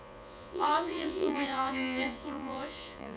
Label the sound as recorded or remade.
remade